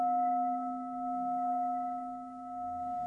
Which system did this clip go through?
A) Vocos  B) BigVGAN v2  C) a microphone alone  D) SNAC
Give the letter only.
D